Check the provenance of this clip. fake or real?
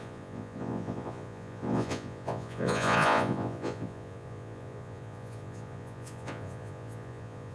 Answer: fake